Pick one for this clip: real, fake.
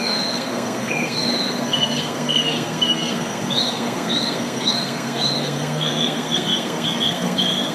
fake